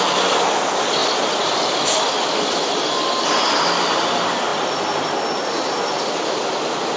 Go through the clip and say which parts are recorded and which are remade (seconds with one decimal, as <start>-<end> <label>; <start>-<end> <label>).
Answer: 0.0-7.0 recorded